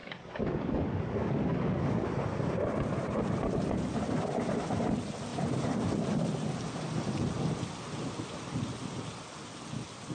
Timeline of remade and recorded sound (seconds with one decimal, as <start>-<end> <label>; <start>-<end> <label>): 0.0-2.1 remade; 2.1-10.1 recorded